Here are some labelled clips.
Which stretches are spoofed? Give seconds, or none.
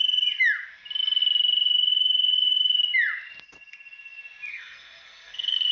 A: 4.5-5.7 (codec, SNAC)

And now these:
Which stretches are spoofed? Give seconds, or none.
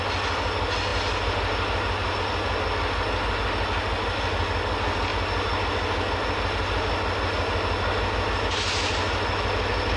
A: none